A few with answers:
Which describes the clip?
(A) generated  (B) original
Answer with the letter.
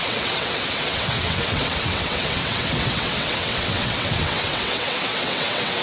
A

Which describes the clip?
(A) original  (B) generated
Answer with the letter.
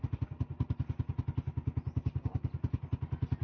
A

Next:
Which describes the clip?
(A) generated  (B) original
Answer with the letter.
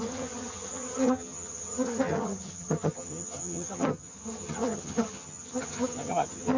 A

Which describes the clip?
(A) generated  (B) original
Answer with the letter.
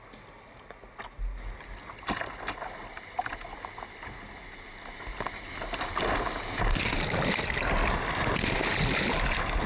B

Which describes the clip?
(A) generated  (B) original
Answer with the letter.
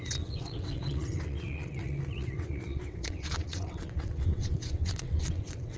A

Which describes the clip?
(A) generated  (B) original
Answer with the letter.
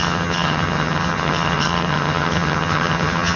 A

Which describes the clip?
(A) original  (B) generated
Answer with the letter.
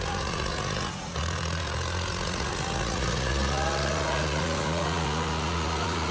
B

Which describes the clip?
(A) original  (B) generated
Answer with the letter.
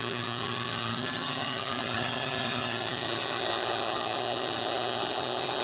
B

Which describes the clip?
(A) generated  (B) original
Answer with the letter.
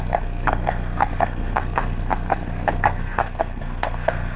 A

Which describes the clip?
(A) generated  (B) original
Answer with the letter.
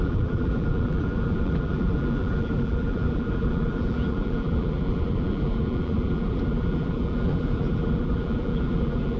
A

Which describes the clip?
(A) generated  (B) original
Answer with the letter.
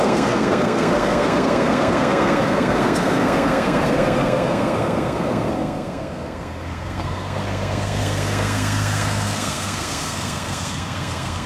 A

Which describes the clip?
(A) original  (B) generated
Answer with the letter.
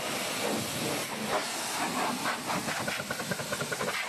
A